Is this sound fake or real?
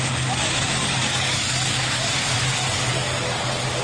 fake